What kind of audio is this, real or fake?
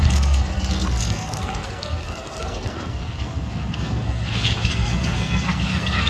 fake